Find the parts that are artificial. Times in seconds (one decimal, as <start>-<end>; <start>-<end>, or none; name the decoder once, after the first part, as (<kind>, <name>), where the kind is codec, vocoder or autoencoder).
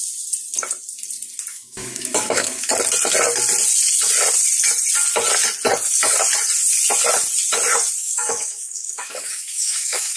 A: 1.5-2.7 (autoencoder, DAC-VAE); 8.0-10.2